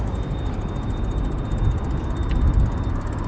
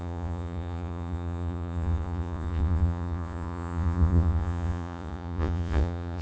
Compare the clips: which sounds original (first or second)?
first